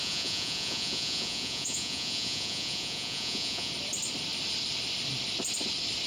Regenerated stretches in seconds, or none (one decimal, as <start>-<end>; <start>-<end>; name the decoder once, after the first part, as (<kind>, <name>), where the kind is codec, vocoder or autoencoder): 0.0-3.7 (vocoder, Vocos)